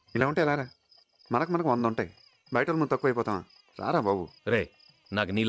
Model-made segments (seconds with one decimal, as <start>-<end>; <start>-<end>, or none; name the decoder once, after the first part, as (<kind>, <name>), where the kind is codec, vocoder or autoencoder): 0.0-1.2 (vocoder, HiFi-GAN)